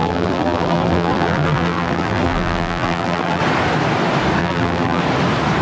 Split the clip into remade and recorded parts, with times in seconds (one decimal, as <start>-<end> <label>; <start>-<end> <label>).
0.0-3.4 remade; 3.4-4.4 recorded; 4.4-5.0 remade; 5.0-5.6 recorded